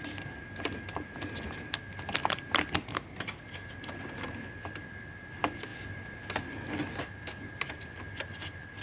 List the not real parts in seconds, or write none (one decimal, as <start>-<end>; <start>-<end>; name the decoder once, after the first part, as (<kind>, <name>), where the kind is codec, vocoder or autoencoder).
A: none